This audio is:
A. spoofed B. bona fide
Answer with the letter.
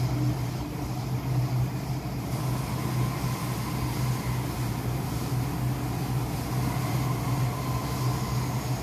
B